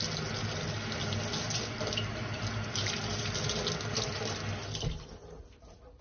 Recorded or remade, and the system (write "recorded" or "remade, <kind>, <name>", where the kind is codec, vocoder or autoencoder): recorded